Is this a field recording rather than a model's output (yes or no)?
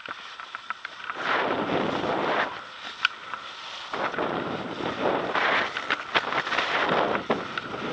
yes